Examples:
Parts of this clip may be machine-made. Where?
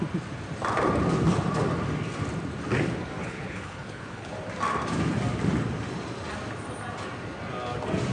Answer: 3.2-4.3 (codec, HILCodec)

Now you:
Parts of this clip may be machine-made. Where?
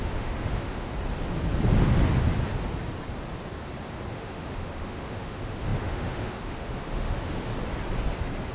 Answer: 0.0-0.9 (autoencoder, DAC-VAE); 4.1-7.5